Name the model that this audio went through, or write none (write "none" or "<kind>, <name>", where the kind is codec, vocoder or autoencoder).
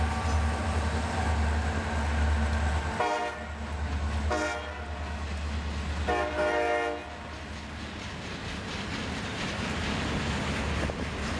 none